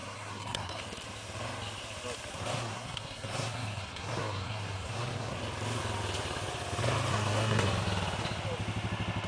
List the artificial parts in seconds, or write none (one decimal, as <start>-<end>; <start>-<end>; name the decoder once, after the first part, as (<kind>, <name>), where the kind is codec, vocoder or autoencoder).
0.0-0.8 (codec, SNAC); 2.3-5.4; 7.1-7.7